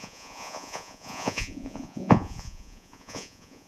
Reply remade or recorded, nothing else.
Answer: remade